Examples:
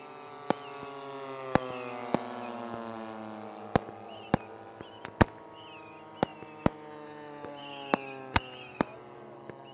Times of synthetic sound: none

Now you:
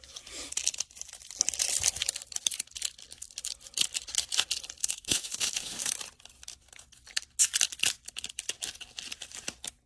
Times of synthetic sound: 4.8-5.9 (autoencoder, DAC-VAE)

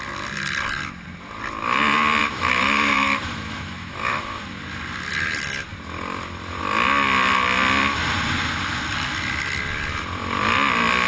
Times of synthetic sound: 2.2-4.4 (autoencoder, DAC-VAE)